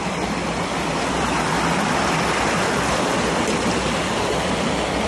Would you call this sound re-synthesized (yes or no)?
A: no